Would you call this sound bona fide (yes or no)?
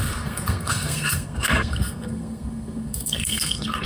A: no